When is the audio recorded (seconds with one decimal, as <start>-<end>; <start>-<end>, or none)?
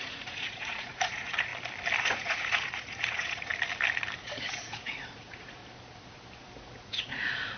1.5-2.0; 3.5-4.2; 5.6-6.7